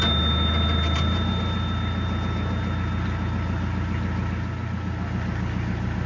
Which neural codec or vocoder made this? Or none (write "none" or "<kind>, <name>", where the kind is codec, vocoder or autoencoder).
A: none